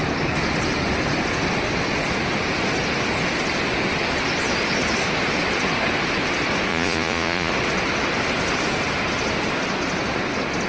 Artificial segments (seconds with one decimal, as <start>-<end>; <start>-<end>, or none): 6.7-7.5